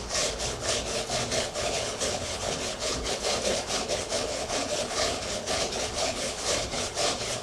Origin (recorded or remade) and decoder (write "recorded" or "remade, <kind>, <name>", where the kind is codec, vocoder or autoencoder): remade, codec, HILCodec